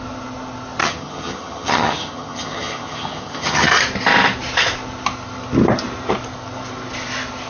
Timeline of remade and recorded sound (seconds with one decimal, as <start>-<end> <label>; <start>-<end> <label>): 0.0-0.8 recorded; 0.8-3.7 remade; 3.7-7.5 recorded